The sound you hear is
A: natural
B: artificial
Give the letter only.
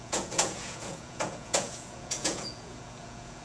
B